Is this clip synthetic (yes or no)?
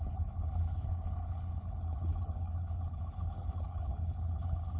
yes